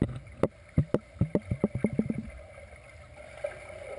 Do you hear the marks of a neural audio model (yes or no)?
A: no